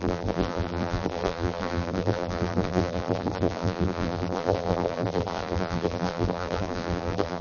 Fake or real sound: fake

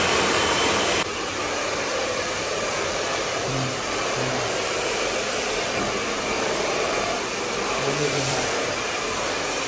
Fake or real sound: fake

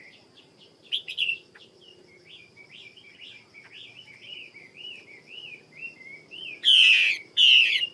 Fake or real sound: fake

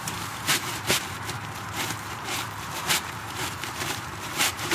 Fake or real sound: fake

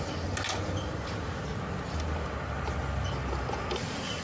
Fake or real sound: real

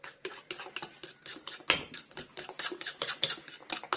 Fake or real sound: fake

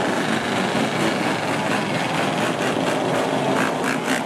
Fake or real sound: real